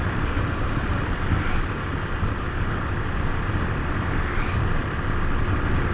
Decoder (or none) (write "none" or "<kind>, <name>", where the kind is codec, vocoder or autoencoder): none